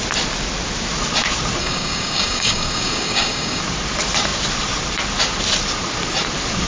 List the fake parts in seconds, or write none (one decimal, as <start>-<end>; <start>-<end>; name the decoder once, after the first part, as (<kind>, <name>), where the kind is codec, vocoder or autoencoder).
1.6-3.6 (codec, DAC)